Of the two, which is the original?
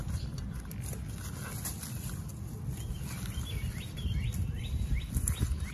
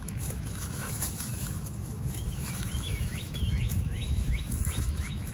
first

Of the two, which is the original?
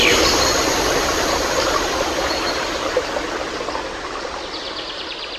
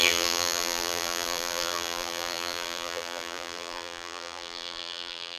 first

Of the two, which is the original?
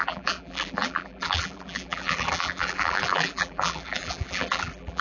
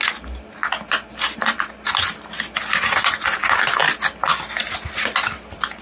second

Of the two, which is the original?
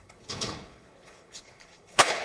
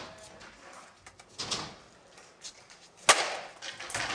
second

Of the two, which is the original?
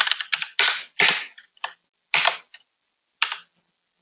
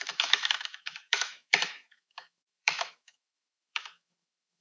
first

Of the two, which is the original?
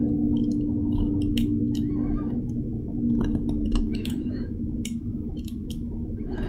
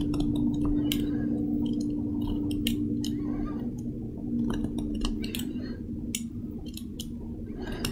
second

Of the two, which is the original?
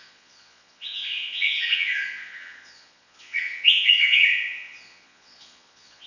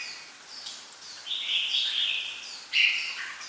second